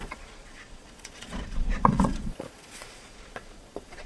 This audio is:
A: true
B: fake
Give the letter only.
B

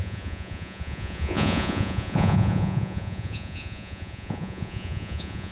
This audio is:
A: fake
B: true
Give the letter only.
A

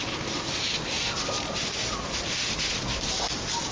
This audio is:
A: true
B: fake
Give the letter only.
A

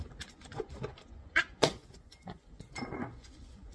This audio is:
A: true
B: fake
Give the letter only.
B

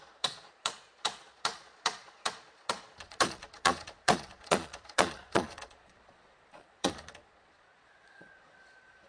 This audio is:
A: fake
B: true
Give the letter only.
A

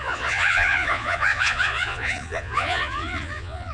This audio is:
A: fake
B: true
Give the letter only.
A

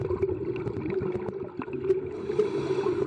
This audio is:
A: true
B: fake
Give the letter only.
A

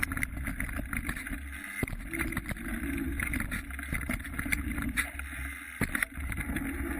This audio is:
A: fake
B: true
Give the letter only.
B